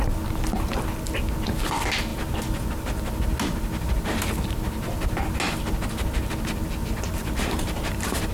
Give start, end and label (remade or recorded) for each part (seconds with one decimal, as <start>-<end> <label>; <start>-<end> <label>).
0.0-7.1 recorded; 7.1-8.3 remade